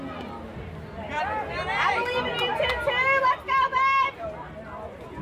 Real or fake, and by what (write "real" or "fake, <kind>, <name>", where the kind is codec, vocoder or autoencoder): real